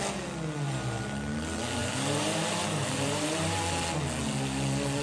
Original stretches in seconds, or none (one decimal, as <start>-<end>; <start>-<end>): 0.0-1.8; 3.6-5.0